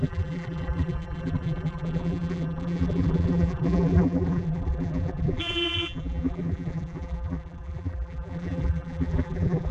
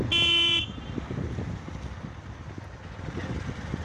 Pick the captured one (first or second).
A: second